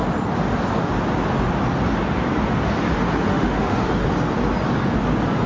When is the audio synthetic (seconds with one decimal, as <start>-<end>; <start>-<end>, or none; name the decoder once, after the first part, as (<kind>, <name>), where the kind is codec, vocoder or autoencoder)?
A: 3.3-3.9 (autoencoder, DAC-VAE)